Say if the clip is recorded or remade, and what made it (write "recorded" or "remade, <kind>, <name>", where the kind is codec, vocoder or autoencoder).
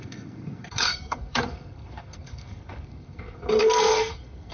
remade, codec, SNAC